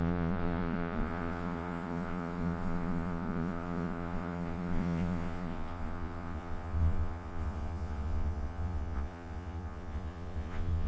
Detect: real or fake fake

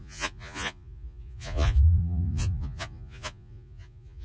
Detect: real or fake fake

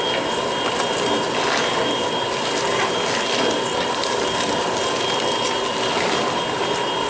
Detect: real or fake real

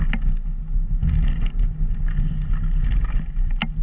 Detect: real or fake real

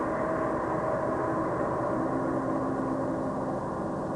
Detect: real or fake real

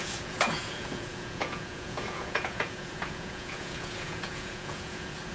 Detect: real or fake fake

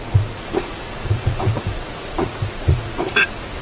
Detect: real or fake fake